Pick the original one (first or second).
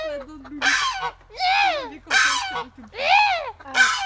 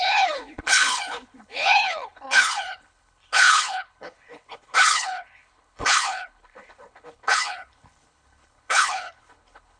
first